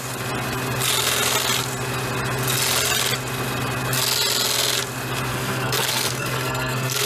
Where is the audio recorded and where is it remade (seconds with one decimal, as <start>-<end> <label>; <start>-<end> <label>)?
0.0-5.3 recorded; 5.3-7.1 remade